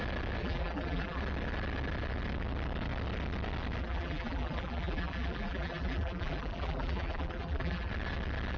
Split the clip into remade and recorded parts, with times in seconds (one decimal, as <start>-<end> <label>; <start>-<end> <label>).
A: 0.0-0.4 recorded; 0.4-1.2 remade; 1.2-3.8 recorded; 3.8-7.9 remade; 7.9-8.6 recorded